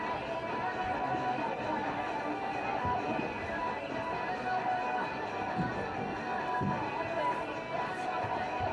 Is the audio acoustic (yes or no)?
yes